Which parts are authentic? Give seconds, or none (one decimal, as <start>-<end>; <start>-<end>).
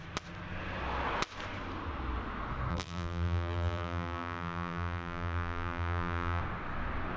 0.0-2.7; 6.4-7.2